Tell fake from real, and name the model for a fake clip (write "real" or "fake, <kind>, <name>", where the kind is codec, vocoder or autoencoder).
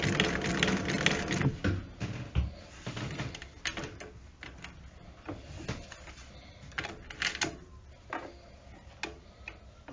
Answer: real